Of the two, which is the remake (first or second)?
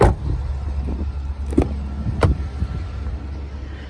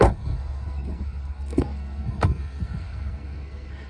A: second